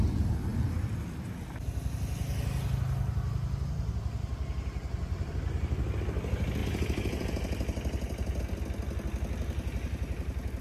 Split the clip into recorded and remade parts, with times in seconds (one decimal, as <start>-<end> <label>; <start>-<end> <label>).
0.0-6.6 recorded; 6.6-8.4 remade; 8.4-10.6 recorded